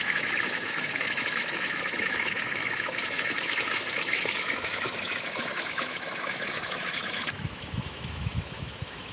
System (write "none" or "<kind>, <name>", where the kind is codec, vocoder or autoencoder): autoencoder, DAC-VAE